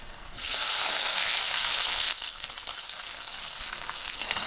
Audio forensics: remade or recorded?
remade